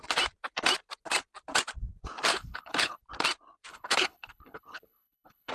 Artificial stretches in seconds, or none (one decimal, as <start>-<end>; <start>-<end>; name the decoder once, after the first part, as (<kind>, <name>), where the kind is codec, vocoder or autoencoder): 2.3-3.0 (codec, HILCodec); 3.7-5.5